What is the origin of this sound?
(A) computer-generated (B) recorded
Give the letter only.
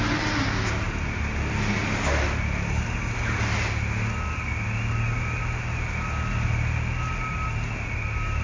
B